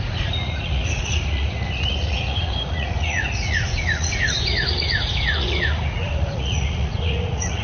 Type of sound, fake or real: fake